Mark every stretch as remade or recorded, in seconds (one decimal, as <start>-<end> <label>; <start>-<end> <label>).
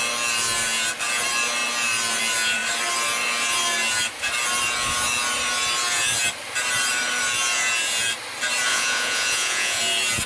0.0-8.7 recorded; 8.7-9.8 remade; 9.8-10.3 recorded